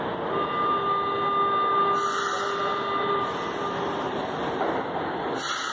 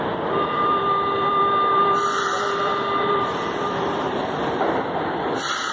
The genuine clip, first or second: first